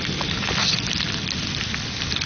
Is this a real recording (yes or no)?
yes